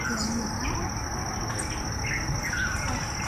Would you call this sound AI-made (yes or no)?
no